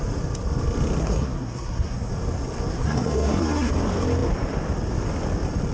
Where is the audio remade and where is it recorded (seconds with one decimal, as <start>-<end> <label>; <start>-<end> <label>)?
0.0-1.0 recorded; 1.0-2.1 remade; 2.1-2.7 recorded; 2.7-3.7 remade; 3.7-5.7 recorded